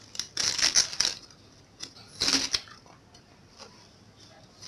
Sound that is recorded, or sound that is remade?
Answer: recorded